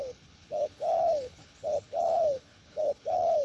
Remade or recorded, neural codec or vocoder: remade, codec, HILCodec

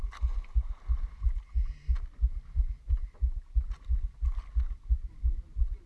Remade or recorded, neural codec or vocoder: recorded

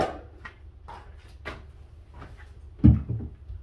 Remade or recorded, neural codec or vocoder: recorded